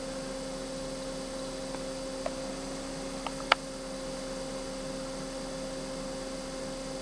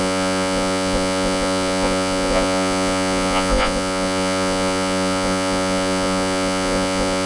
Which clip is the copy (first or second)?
second